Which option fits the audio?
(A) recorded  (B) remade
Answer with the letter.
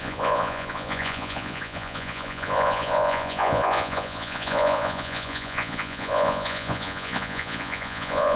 B